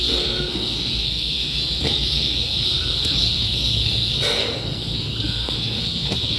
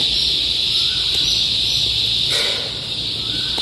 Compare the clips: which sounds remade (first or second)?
first